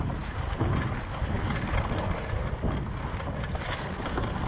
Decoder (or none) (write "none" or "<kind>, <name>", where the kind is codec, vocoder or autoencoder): none